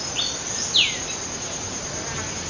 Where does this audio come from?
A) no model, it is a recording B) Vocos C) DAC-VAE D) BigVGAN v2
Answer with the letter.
A